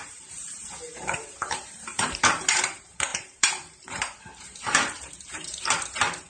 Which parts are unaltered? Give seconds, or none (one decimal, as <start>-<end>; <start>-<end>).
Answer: none